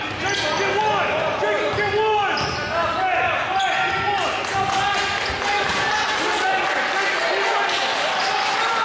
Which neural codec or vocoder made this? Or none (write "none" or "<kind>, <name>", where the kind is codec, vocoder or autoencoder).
none